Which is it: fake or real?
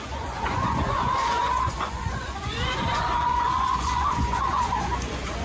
fake